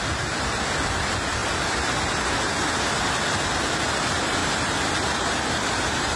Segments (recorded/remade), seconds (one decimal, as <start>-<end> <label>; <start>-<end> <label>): 0.0-4.4 recorded; 4.4-6.2 remade